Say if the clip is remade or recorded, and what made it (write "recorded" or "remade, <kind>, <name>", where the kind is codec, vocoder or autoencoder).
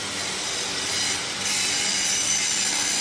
remade, vocoder, BigVGAN v2